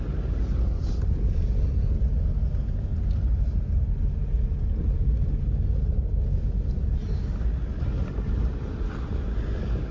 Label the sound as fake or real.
real